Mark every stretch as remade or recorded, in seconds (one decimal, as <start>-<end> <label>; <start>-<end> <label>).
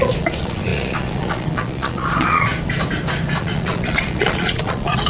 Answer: 0.0-2.5 remade; 2.5-3.4 recorded; 3.4-5.1 remade